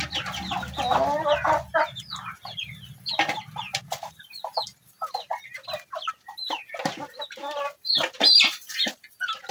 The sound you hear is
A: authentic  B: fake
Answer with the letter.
A